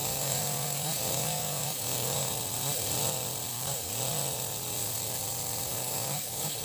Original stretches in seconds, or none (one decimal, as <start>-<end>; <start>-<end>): 2.3-3.5; 4.0-5.7